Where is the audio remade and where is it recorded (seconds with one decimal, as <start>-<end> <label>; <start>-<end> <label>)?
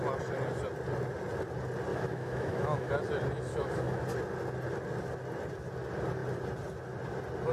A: 0.0-1.9 recorded; 1.9-2.9 remade; 2.9-3.5 recorded; 3.5-4.0 remade; 4.0-7.5 recorded